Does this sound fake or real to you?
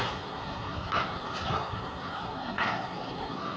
fake